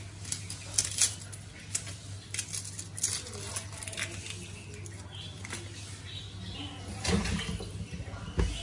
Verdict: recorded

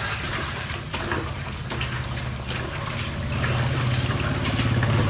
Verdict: recorded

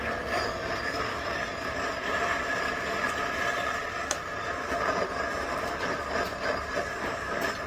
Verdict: recorded